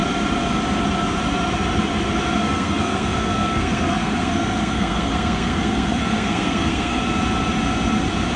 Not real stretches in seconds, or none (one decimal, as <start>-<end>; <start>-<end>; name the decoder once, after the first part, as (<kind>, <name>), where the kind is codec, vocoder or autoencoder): 2.4-7.0 (codec, SNAC)